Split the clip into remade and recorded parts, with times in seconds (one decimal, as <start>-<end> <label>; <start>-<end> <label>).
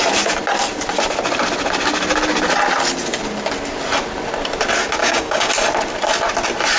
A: 0.0-5.0 recorded; 5.0-5.5 remade; 5.5-6.8 recorded